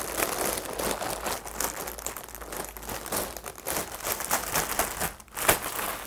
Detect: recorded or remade recorded